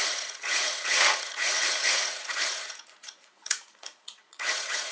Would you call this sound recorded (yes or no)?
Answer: no